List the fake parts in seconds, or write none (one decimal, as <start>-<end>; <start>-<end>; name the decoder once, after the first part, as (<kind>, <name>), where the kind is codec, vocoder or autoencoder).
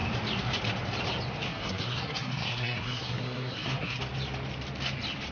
1.5-4.0 (codec, SNAC)